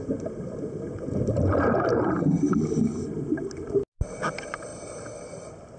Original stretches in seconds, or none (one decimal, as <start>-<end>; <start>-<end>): 0.0-4.7